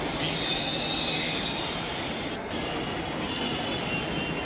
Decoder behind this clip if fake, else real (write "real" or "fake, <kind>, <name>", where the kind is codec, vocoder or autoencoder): real